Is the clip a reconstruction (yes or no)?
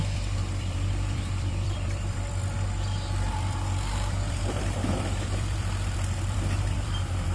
yes